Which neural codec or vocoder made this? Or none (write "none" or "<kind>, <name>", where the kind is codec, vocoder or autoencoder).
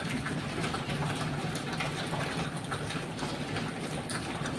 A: none